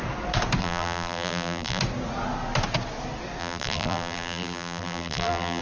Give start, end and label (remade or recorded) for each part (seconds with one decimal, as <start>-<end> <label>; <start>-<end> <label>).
0.0-0.6 recorded; 0.6-1.8 remade; 1.8-3.4 recorded; 3.4-5.6 remade

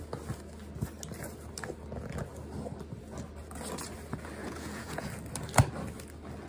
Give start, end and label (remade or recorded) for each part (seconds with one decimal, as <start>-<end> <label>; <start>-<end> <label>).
0.0-4.4 recorded; 4.4-5.1 remade; 5.1-6.5 recorded

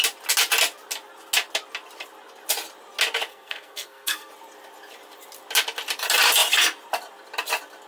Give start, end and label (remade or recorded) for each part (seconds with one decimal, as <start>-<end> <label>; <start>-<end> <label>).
0.0-3.3 recorded; 3.3-4.3 remade; 4.3-7.9 recorded

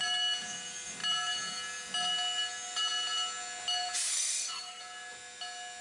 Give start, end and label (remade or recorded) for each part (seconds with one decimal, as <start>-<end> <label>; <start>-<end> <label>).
0.0-4.1 recorded; 4.1-4.8 remade; 4.8-5.8 recorded

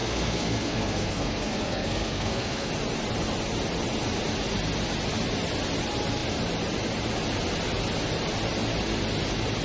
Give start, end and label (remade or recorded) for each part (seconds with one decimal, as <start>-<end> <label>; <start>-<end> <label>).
0.0-2.7 remade; 2.7-9.6 recorded